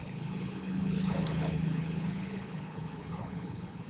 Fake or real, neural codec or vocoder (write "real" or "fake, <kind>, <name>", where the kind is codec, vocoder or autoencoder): fake, codec, HILCodec